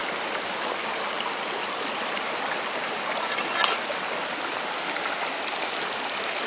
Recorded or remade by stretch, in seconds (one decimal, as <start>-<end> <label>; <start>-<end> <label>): 0.0-6.5 recorded